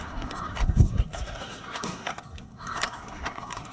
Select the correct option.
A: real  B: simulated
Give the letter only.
B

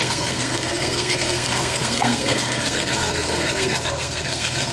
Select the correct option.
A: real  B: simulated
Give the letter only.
B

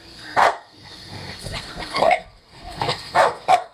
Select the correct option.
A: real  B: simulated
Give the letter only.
B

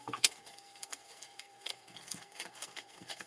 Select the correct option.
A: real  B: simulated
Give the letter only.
B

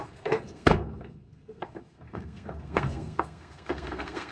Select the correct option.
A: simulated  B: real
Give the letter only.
A